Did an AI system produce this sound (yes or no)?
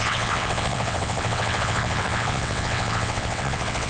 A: yes